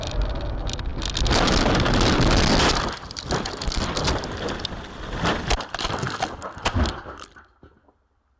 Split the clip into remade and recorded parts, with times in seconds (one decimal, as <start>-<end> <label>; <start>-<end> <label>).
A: 0.0-8.4 recorded